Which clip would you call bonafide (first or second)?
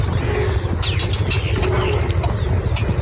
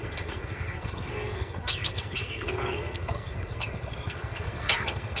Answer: first